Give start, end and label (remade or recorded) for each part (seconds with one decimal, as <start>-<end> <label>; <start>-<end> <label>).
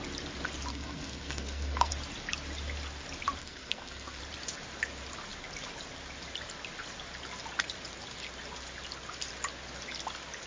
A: 0.0-0.7 recorded; 0.7-1.9 remade; 1.9-3.4 recorded; 3.4-4.2 remade; 4.2-10.5 recorded